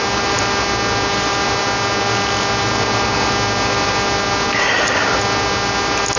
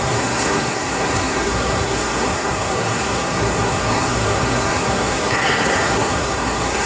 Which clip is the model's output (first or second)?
second